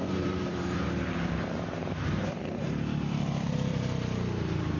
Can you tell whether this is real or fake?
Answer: fake